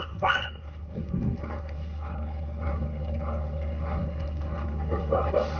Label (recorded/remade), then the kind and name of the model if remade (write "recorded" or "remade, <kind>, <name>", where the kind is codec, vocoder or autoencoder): remade, codec, SNAC